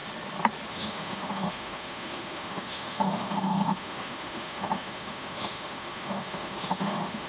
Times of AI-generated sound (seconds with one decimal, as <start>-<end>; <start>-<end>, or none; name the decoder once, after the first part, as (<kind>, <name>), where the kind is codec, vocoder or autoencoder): 0.7-7.3 (autoencoder, DAC-VAE)